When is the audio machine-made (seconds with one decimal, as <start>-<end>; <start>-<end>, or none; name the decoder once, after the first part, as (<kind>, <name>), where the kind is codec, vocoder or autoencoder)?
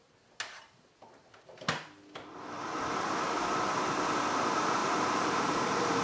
4.8-6.0 (vocoder, BigVGAN v2)